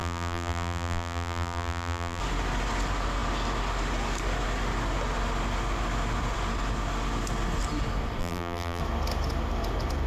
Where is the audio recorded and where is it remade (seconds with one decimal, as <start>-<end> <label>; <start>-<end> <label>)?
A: 0.0-2.2 remade; 2.2-8.2 recorded; 8.2-8.8 remade; 8.8-10.1 recorded